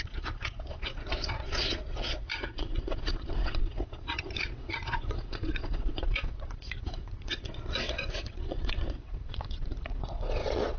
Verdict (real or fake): fake